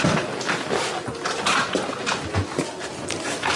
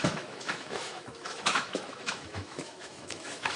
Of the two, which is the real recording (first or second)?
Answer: first